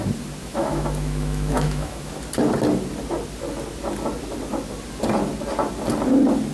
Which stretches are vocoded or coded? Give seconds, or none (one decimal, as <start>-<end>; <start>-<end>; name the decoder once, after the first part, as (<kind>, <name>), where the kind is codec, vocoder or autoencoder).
0.4-2.1 (autoencoder, DAC-VAE)